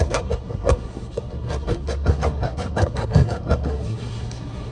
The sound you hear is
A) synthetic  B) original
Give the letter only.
A